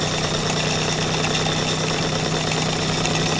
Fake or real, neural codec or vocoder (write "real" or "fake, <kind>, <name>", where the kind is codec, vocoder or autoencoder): real